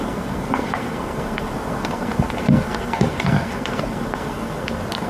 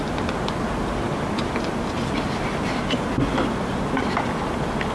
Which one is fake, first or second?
first